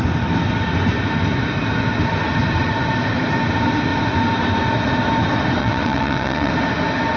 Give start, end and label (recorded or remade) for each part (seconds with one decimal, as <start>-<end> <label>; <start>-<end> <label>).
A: 0.0-5.6 recorded; 5.6-6.5 remade; 6.5-7.2 recorded